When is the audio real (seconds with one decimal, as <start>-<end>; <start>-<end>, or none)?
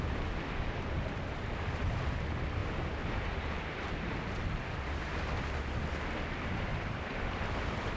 0.0-2.6; 5.2-6.7; 7.2-8.0